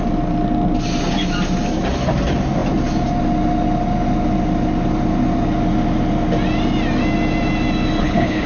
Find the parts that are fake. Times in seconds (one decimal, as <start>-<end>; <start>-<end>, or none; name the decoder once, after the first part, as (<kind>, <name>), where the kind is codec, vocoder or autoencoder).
8.0-8.5 (codec, HILCodec)